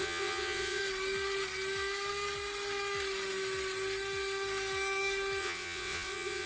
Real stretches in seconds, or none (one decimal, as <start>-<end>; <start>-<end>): 0.8-5.4